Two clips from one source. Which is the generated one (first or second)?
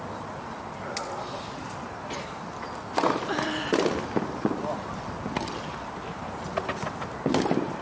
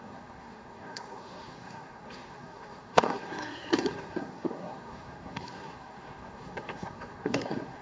second